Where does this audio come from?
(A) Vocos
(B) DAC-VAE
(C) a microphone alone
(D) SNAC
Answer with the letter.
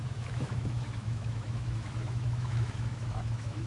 B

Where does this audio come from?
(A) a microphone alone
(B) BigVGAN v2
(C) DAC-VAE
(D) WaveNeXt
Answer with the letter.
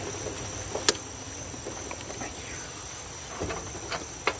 A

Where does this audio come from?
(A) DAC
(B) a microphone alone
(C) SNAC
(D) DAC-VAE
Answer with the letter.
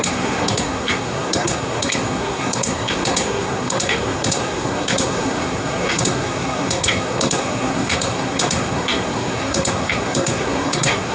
C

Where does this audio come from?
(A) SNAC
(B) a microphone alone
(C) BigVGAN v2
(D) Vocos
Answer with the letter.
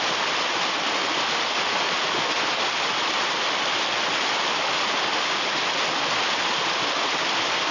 B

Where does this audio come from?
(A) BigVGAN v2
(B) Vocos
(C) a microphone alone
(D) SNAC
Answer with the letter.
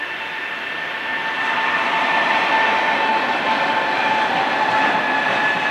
C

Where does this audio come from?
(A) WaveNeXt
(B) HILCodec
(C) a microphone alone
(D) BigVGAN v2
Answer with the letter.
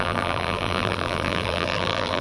D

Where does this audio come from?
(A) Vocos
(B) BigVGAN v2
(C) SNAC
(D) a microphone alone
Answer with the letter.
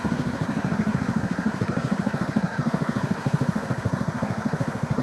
C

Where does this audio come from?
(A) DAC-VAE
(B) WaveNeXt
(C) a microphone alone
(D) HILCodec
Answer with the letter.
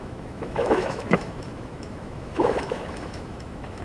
A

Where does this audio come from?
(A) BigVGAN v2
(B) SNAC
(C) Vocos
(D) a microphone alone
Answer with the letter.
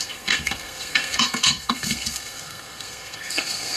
B